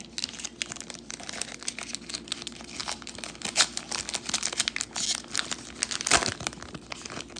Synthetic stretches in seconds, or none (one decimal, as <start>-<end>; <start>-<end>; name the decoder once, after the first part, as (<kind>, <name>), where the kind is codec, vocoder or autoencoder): none